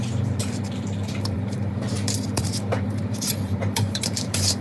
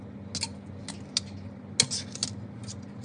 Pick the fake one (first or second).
first